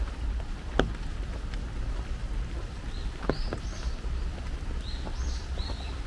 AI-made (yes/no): no